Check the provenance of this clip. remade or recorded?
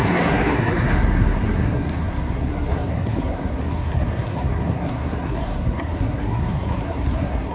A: remade